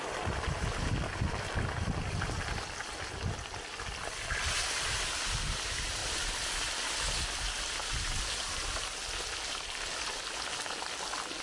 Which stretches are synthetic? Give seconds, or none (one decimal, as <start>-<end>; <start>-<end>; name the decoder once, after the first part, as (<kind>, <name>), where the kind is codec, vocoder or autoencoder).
none